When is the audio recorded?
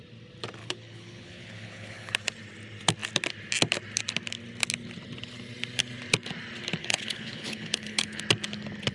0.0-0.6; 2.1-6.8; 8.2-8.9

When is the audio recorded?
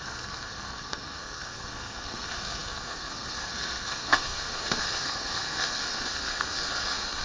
none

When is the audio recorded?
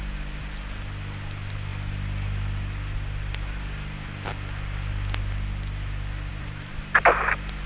0.0-6.3; 6.8-7.7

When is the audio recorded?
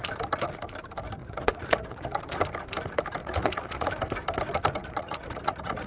0.0-1.2; 2.4-3.2; 3.9-4.8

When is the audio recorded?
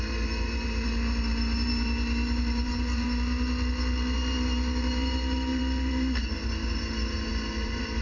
none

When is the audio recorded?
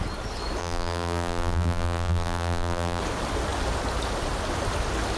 0.0-0.6; 3.0-5.2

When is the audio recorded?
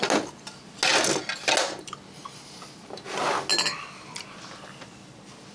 0.0-5.5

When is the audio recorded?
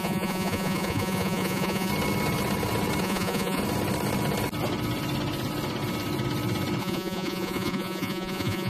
1.9-3.0; 3.6-6.8